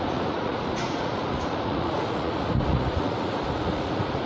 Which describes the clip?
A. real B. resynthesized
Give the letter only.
B